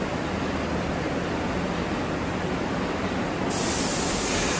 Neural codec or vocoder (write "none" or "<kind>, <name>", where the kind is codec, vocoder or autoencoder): none